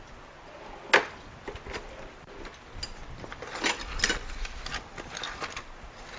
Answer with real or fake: real